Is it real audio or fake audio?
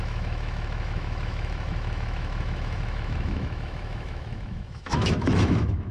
fake